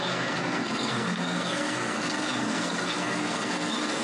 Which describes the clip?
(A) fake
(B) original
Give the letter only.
A